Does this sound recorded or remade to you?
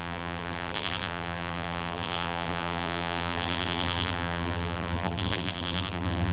remade